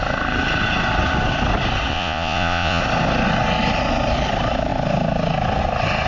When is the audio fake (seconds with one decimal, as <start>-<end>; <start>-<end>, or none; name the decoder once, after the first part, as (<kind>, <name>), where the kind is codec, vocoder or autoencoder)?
1.9-2.8 (vocoder, Vocos)